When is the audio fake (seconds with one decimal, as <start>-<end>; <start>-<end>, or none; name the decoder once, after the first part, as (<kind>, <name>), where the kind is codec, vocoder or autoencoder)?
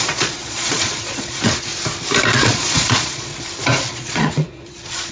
0.0-1.7 (vocoder, Vocos); 2.3-3.3; 3.9-5.1